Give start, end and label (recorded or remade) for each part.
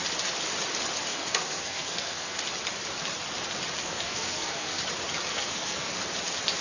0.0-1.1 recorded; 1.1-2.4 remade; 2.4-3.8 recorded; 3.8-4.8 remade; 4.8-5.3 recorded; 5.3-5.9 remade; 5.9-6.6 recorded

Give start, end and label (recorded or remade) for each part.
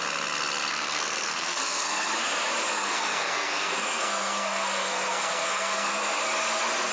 0.0-0.7 recorded; 0.7-2.1 remade; 2.1-2.7 recorded; 2.7-6.2 remade; 6.2-6.9 recorded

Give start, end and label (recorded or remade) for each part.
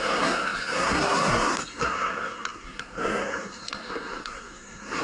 0.0-5.0 remade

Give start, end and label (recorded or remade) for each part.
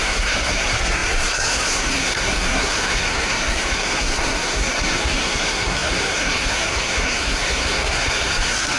0.0-8.8 remade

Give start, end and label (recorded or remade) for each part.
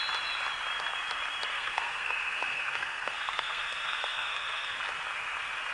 0.0-1.5 recorded; 1.5-4.8 remade; 4.8-5.7 recorded